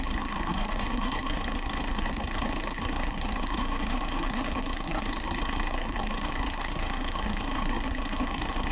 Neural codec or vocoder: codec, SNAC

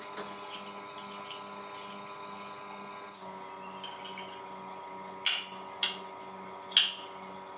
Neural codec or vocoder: none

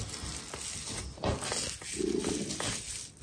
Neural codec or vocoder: none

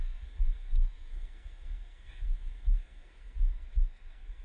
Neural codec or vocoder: codec, SNAC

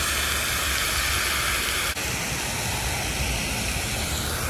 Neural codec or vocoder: none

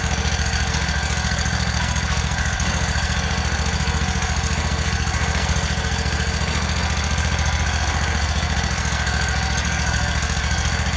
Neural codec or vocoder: codec, SNAC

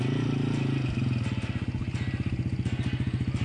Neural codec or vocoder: none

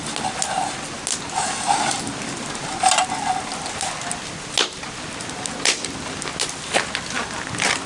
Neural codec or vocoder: none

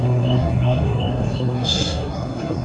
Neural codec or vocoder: codec, SNAC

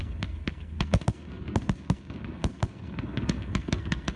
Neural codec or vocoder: codec, SNAC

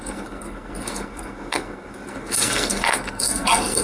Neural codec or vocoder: codec, SNAC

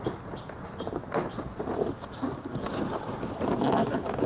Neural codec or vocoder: none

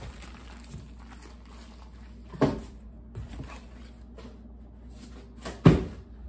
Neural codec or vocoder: none